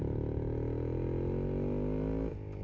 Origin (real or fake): real